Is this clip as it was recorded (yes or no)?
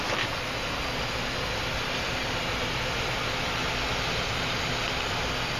yes